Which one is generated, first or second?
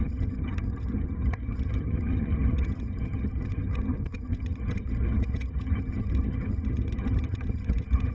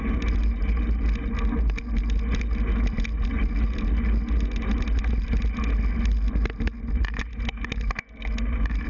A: first